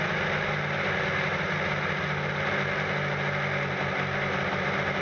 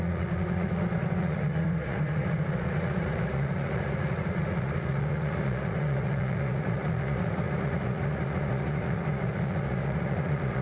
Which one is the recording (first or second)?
first